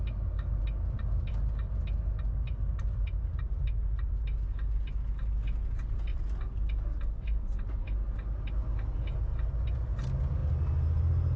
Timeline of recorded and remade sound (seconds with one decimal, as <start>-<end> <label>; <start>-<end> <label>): 0.0-11.4 recorded

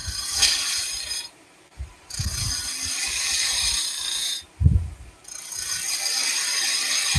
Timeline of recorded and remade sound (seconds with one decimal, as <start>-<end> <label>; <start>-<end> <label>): 0.0-2.1 remade; 2.1-3.0 recorded; 3.0-3.9 remade; 3.9-7.2 recorded

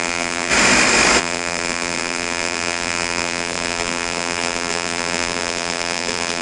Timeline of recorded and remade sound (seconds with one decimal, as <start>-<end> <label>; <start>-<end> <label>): 0.0-0.5 remade; 0.5-1.2 recorded; 1.2-6.4 remade

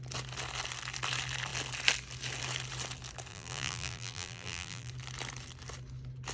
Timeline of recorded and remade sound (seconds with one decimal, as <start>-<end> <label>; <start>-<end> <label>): 0.0-3.3 recorded; 3.3-4.9 remade; 4.9-6.3 recorded

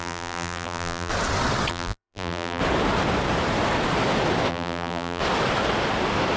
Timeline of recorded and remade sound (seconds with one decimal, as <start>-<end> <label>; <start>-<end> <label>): 0.0-1.1 remade; 1.1-1.7 recorded; 1.7-2.6 remade; 2.6-4.5 recorded; 4.5-5.2 remade; 5.2-6.4 recorded

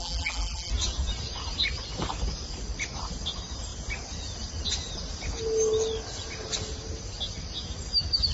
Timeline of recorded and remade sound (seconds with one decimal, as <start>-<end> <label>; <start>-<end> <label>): 0.0-0.7 remade; 0.7-8.3 recorded